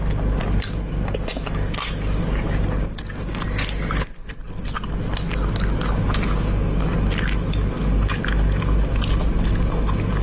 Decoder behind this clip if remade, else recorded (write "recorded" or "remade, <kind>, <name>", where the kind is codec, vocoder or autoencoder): recorded